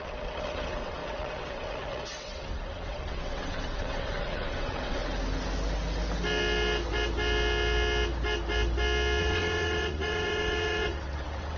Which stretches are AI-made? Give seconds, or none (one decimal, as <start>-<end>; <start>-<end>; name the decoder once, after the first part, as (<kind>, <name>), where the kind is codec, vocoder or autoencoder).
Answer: 0.0-5.0 (vocoder, WaveNeXt); 9.2-11.6